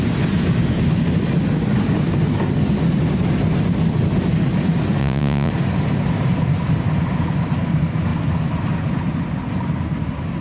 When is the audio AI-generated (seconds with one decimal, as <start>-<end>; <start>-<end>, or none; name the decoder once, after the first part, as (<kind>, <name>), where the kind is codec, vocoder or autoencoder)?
5.0-5.5 (vocoder, Vocos)